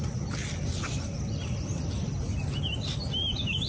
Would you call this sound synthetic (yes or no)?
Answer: no